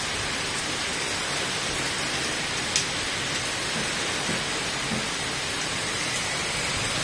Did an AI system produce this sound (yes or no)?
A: no